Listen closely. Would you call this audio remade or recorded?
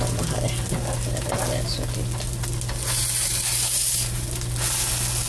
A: recorded